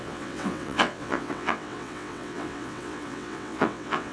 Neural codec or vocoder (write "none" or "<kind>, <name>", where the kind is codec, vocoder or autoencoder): vocoder, WaveNeXt